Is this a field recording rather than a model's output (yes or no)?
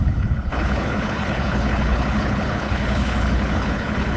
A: no